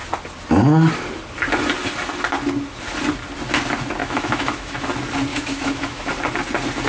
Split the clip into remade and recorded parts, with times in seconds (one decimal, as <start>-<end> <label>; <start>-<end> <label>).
0.0-4.0 recorded; 4.0-4.8 remade; 4.8-5.3 recorded; 5.3-6.1 remade; 6.1-6.9 recorded